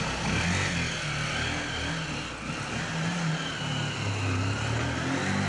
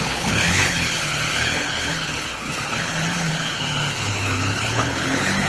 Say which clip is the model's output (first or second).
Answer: second